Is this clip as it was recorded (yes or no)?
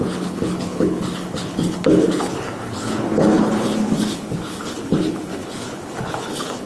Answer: no